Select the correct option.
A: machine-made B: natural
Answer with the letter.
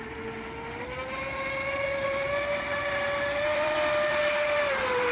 A